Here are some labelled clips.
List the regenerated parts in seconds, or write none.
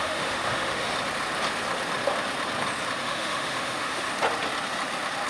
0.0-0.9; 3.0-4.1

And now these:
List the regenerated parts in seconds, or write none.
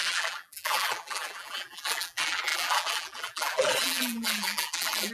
0.0-5.1